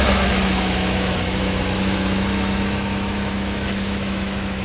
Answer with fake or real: fake